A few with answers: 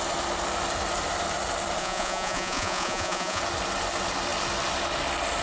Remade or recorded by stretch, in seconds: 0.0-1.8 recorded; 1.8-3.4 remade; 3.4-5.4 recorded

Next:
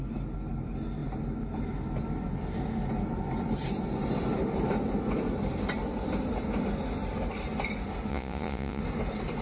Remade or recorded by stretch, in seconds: 0.0-8.1 recorded; 8.1-8.8 remade; 8.8-9.4 recorded

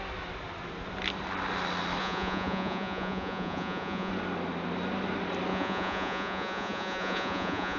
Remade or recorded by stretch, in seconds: 0.0-2.0 recorded; 2.0-4.1 remade; 4.1-5.5 recorded; 5.5-7.8 remade